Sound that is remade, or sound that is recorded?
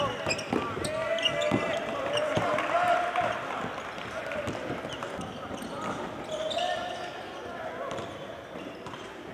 recorded